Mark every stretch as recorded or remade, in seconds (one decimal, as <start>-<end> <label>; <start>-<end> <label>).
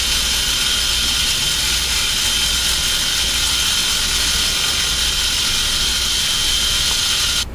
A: 0.0-7.5 recorded